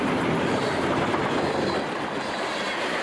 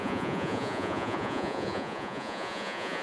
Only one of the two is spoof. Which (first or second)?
second